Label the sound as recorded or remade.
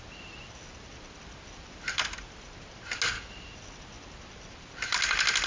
recorded